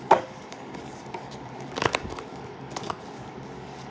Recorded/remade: remade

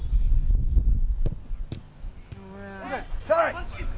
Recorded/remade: recorded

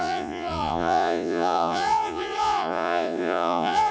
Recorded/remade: remade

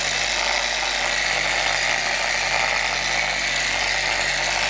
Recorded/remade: recorded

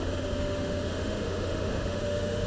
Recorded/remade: remade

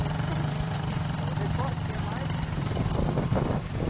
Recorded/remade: remade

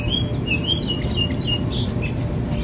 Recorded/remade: recorded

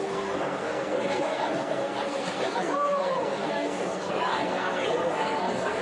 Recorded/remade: remade